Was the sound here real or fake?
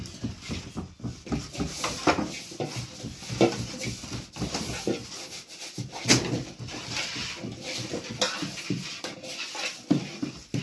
real